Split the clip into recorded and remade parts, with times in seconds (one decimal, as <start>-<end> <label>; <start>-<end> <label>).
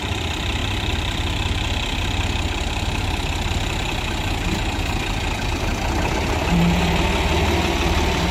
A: 0.0-8.3 recorded